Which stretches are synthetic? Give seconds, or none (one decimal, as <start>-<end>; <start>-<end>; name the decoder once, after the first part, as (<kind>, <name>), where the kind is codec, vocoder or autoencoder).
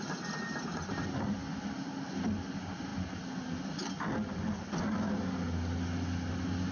none